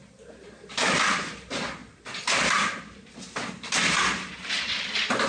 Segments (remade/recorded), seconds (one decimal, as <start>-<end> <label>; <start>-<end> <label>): 0.0-5.3 recorded